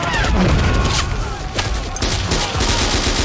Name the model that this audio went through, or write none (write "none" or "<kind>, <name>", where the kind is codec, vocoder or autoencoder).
none